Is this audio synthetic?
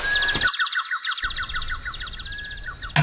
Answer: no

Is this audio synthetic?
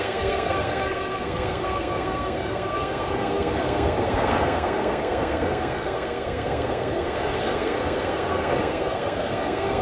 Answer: yes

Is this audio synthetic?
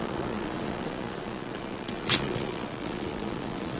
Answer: yes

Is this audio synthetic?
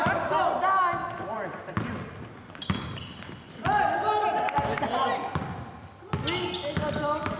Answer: no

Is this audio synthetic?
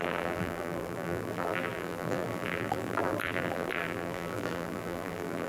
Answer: yes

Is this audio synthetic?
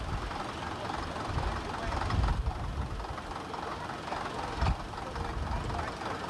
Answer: no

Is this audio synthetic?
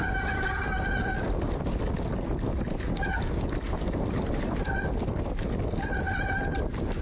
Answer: no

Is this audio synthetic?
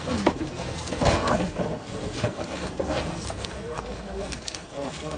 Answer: yes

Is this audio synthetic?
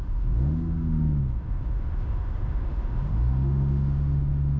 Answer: yes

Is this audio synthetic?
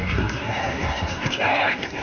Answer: yes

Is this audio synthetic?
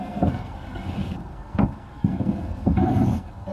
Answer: yes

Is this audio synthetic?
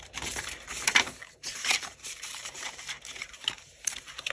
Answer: yes